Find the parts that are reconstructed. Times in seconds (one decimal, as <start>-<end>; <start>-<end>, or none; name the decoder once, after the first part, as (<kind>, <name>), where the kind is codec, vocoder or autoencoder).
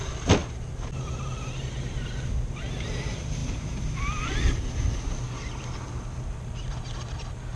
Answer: none